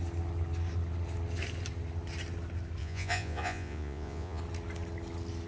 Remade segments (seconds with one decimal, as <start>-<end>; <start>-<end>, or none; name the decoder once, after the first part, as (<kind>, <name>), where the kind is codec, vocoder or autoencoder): 2.8-4.4 (vocoder, Vocos)